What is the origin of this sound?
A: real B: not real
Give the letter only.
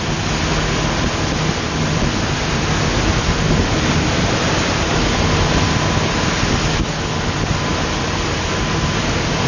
A